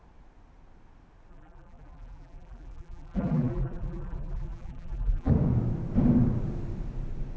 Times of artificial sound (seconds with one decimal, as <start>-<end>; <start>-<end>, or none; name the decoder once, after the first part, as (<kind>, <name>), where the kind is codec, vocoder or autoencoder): 1.3-5.3 (vocoder, BigVGAN v2)

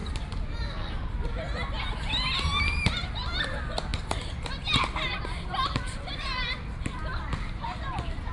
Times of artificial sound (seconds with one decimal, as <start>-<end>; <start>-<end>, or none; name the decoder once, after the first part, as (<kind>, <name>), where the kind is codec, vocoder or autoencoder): 0.0-1.8 (vocoder, BigVGAN v2); 3.9-7.0